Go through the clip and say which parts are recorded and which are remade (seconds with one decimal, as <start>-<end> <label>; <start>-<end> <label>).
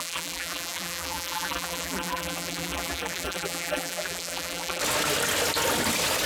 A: 0.0-4.8 remade; 4.8-6.3 recorded